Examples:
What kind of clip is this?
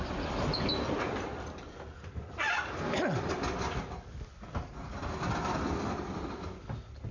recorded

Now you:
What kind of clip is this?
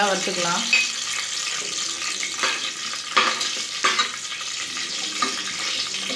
recorded